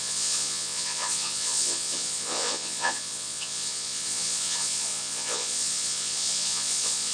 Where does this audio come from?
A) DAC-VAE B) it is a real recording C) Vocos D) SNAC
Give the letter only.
C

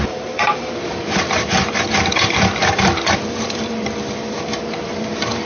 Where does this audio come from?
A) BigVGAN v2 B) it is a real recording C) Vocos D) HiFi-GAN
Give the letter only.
A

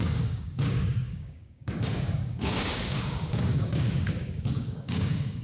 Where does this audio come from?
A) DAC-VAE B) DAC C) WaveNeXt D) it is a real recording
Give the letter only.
B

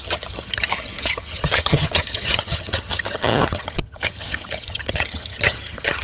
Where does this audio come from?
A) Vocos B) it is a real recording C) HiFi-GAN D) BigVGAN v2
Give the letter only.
C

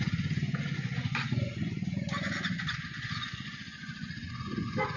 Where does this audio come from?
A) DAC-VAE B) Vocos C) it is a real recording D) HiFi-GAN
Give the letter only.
B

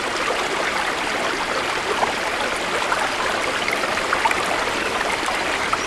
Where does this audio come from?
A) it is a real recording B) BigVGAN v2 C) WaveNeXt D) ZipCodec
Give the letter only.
B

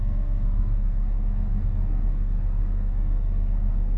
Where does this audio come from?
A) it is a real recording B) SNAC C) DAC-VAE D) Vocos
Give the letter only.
B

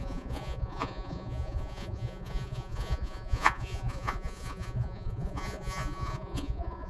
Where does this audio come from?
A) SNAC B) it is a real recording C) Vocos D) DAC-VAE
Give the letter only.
C